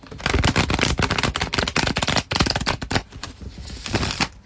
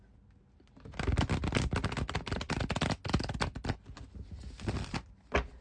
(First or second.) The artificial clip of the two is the first